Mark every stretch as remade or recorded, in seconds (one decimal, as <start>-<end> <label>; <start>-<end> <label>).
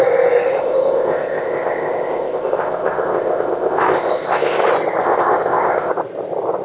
0.0-0.6 recorded; 0.6-4.6 remade; 4.6-5.0 recorded; 5.0-5.9 remade; 5.9-6.6 recorded